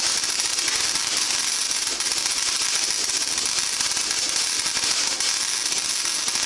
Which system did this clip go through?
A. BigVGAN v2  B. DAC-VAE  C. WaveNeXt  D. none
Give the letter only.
D